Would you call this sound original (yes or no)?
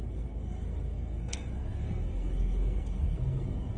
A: no